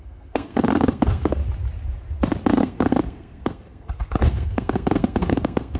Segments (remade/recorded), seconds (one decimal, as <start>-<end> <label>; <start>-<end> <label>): 0.0-1.4 remade; 1.4-2.5 recorded; 2.5-5.8 remade